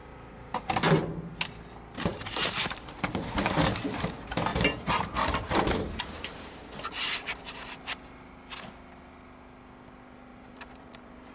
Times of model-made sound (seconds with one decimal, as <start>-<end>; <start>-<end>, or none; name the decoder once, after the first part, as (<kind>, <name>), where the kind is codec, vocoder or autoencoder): 0.0-0.6 (vocoder, BigVGAN v2); 2.1-3.6; 4.5-6.8; 10.3-11.3